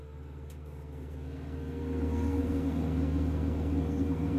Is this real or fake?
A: fake